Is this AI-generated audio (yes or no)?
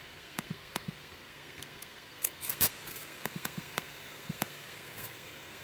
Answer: yes